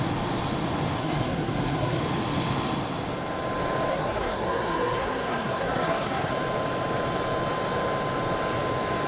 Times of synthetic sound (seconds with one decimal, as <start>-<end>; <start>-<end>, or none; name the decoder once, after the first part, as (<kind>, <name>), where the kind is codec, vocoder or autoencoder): 1.0-2.0 (codec, SNAC); 3.9-6.3